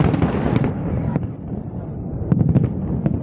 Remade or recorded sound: remade